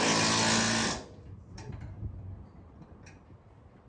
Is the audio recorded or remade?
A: recorded